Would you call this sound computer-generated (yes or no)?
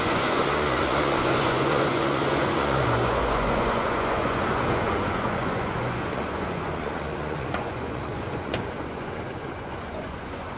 yes